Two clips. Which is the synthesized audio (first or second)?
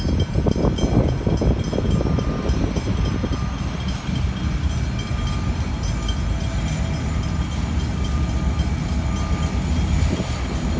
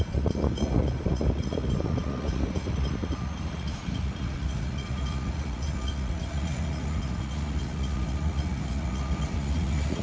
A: second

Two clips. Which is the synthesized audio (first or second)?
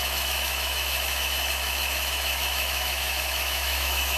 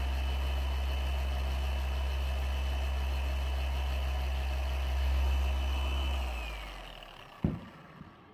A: first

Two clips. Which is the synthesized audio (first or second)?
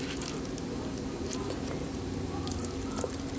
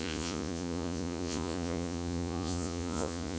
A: second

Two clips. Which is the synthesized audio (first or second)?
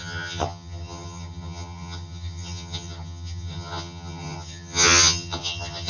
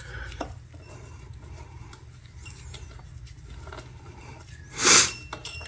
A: first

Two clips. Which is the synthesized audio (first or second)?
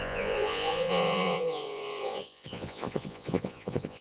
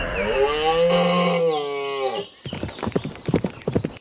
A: first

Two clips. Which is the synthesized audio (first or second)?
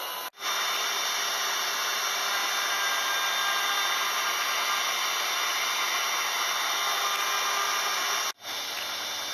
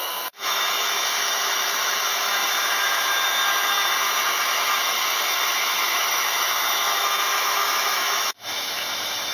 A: second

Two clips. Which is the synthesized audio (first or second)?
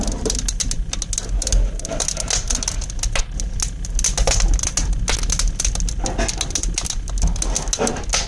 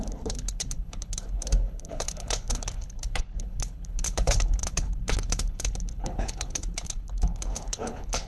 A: second